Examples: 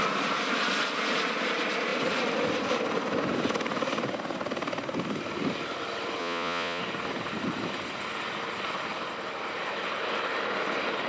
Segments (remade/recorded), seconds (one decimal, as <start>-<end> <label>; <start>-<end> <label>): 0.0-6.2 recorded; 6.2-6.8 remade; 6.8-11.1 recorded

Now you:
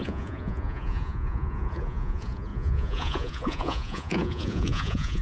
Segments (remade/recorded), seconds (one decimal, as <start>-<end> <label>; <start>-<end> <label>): 0.0-5.2 remade

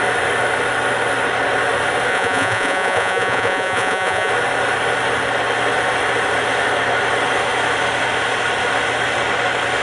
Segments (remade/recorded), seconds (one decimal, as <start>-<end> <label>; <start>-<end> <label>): 0.0-2.1 recorded; 2.1-4.3 remade; 4.3-9.8 recorded

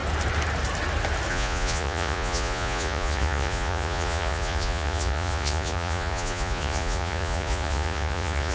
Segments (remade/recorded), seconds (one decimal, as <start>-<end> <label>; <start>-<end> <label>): 0.0-1.3 recorded; 1.3-8.5 remade

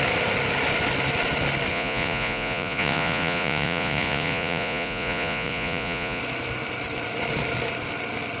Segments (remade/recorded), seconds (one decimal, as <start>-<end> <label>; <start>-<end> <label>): 0.0-1.7 recorded; 1.7-6.2 remade; 6.2-8.4 recorded

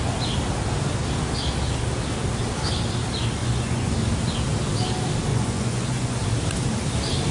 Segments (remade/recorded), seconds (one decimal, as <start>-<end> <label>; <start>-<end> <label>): 0.0-3.4 recorded; 3.4-3.9 remade; 3.9-5.3 recorded; 5.3-6.2 remade; 6.2-7.3 recorded

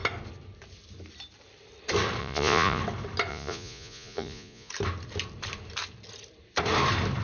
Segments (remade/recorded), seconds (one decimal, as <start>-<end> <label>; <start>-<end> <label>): 0.0-2.2 recorded; 2.2-2.8 remade; 2.8-3.3 recorded; 3.3-4.7 remade; 4.7-7.2 recorded